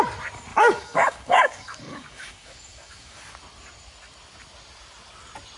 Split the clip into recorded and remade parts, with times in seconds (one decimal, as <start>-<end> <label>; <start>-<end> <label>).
0.0-0.5 recorded; 0.5-3.2 remade; 3.2-5.6 recorded